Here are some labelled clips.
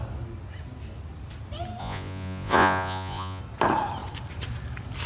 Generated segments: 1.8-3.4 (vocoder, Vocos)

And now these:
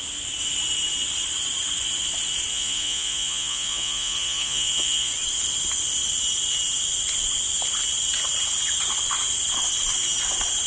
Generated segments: 2.5-5.1 (vocoder, Vocos)

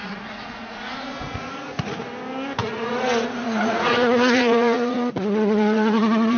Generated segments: 0.0-2.0 (vocoder, Vocos); 2.6-6.4

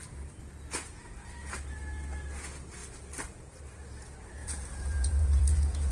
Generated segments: 0.8-1.3 (vocoder, Vocos); 4.4-5.9

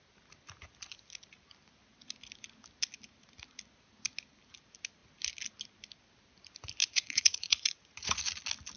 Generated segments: 6.8-8.2 (vocoder, Vocos)

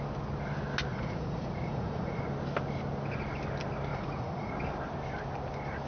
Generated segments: 0.9-2.2 (vocoder, Vocos); 3.9-4.5

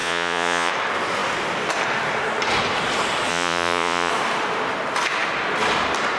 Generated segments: 0.0-0.7 (vocoder, Vocos); 3.3-4.1